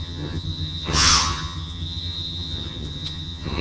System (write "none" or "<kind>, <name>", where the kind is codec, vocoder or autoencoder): vocoder, HiFi-GAN